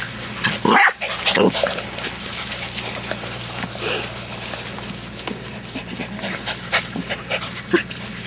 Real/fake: real